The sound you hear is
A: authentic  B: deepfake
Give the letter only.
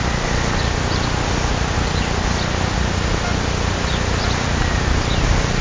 A